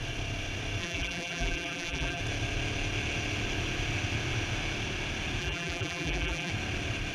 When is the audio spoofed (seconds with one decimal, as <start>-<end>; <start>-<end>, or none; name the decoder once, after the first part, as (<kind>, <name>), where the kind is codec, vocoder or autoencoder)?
0.8-2.2 (vocoder, BigVGAN v2); 5.4-6.5